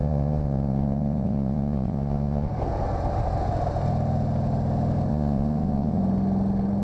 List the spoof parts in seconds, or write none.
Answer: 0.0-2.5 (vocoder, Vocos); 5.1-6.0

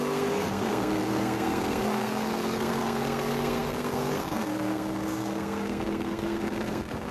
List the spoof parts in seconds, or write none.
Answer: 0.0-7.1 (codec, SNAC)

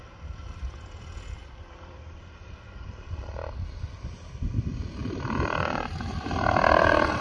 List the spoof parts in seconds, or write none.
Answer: 1.4-4.4 (vocoder, BigVGAN v2); 5.0-7.2

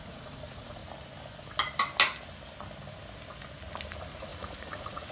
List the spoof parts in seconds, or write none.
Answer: 0.0-0.8 (vocoder, Vocos); 3.9-5.1

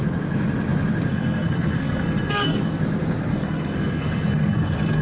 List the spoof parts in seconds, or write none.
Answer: 1.1-2.8 (codec, SNAC); 3.3-5.0

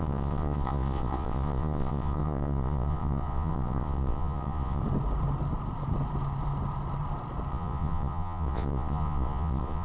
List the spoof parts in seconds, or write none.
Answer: 0.0-4.8 (vocoder, Vocos); 7.5-9.8